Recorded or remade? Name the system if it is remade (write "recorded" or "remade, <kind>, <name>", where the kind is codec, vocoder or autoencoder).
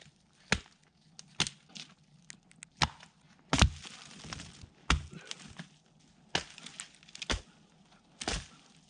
recorded